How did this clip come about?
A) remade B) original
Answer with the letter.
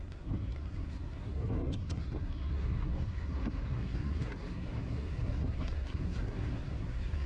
A